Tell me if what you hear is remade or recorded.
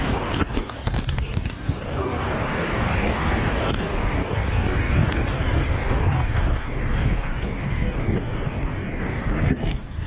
remade